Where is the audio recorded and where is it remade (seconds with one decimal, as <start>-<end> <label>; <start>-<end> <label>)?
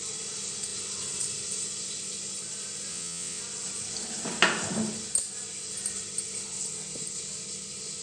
0.0-2.9 recorded; 2.9-3.4 remade; 3.4-8.0 recorded